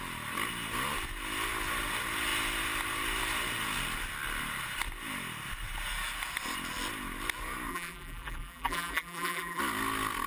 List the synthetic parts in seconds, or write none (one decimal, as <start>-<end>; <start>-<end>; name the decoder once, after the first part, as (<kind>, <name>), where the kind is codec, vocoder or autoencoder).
7.7-9.6 (vocoder, BigVGAN v2)